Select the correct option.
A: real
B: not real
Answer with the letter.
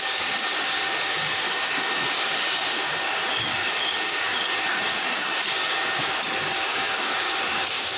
B